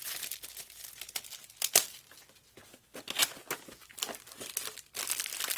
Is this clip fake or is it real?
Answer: real